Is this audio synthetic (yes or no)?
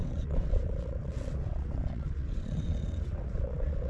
yes